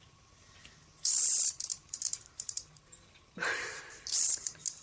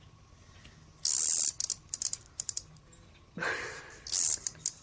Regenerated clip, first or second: first